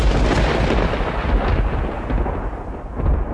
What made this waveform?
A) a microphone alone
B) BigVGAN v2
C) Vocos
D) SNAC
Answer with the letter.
A